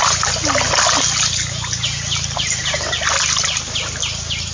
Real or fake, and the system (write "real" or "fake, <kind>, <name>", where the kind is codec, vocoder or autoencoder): real